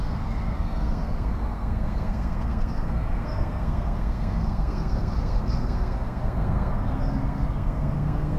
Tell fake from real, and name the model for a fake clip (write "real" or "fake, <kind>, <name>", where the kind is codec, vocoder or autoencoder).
fake, codec, SNAC